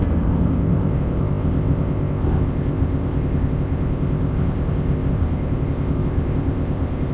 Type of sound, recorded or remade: remade